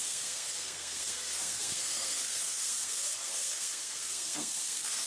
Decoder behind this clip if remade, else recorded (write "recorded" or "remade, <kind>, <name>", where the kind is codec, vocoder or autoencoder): remade, codec, SNAC